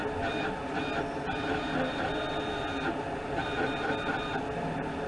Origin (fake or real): real